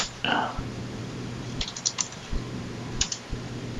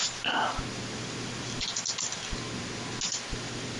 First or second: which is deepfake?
first